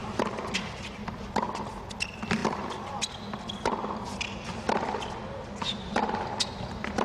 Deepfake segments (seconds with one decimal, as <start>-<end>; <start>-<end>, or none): none